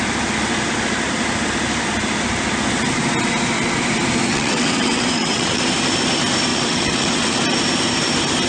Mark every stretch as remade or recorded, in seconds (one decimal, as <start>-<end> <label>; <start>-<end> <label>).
0.0-4.3 recorded; 4.3-5.6 remade; 5.6-6.5 recorded; 6.5-7.4 remade; 7.4-8.5 recorded